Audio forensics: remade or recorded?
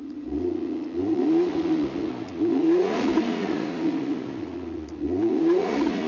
remade